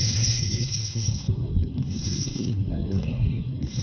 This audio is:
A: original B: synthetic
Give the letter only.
B